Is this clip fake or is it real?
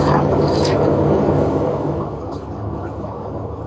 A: fake